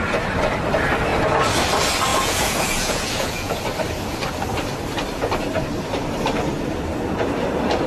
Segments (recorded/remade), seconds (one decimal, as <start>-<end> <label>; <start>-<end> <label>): 0.0-2.1 recorded; 2.1-3.6 remade; 3.6-7.9 recorded